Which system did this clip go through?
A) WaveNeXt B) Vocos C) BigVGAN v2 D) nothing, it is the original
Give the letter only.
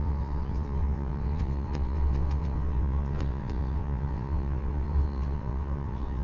A